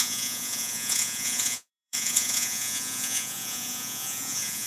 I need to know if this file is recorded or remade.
remade